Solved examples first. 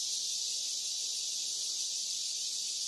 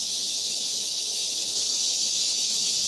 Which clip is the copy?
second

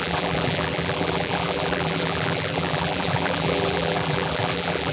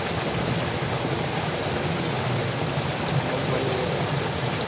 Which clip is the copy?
first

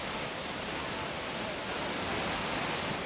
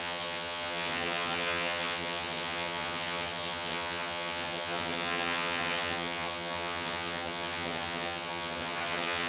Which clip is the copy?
second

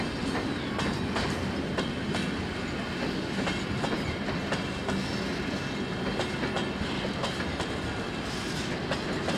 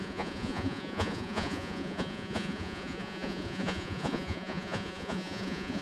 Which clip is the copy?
second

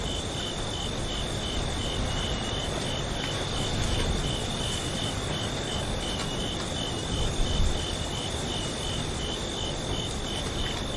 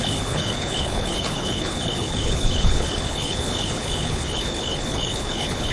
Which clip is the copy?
second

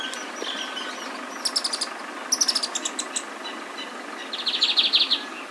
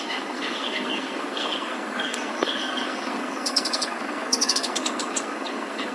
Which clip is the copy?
second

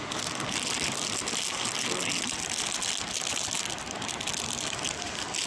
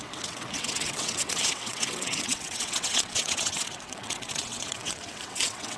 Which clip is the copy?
second